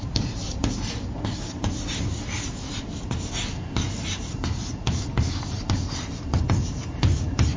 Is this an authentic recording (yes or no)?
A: no